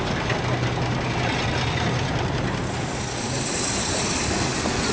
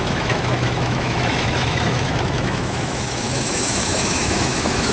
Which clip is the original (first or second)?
first